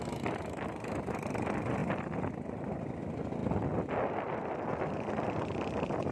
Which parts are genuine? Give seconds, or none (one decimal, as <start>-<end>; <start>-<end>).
0.0-6.1